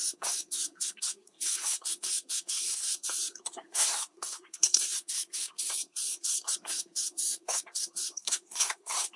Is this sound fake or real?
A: fake